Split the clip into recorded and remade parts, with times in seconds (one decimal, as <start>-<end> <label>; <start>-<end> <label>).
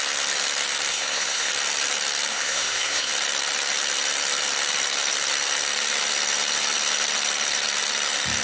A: 0.0-0.9 recorded; 0.9-1.5 remade; 1.5-2.3 recorded; 2.3-3.1 remade; 3.1-8.4 recorded